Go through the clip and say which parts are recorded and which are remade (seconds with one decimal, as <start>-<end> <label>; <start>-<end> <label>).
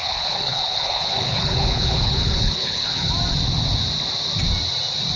0.0-3.1 remade; 3.1-5.2 recorded